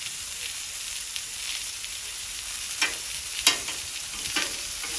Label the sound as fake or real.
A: fake